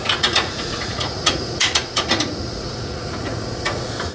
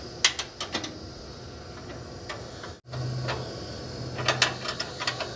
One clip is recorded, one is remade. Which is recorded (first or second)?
second